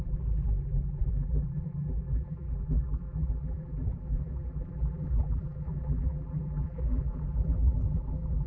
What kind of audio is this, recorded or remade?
remade